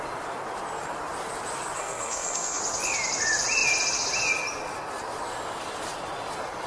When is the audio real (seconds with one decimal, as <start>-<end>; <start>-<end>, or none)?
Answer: 0.0-1.8; 2.6-6.7